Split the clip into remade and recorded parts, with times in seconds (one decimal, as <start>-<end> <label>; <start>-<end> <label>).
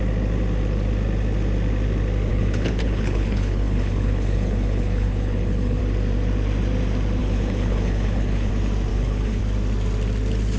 0.0-2.3 recorded; 2.3-5.8 remade; 5.8-7.2 recorded; 7.2-8.5 remade; 8.5-8.9 recorded; 8.9-9.4 remade; 9.4-10.6 recorded